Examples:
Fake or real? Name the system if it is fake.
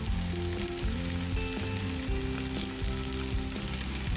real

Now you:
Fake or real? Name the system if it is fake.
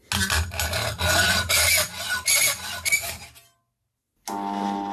real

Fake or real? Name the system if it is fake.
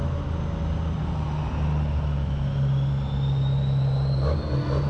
real